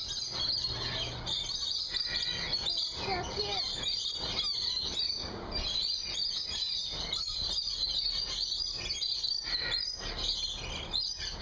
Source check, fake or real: real